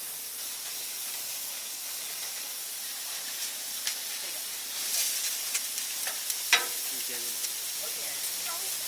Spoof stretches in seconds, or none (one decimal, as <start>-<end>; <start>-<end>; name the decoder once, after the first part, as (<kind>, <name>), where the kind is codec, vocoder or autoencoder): 0.7-2.5 (codec, DAC)